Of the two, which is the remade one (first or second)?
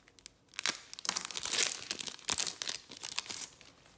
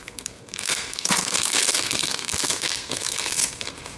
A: second